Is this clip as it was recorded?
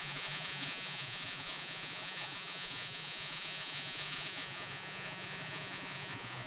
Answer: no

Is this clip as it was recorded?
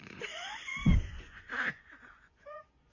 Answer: no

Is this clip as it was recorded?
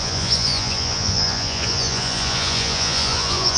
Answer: no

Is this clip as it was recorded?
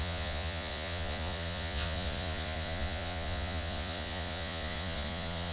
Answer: no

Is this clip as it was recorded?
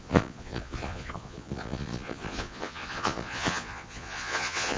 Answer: no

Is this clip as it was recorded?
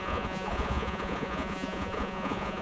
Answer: no